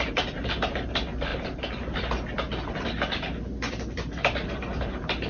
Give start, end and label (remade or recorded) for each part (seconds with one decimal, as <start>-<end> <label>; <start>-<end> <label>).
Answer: 0.0-5.3 recorded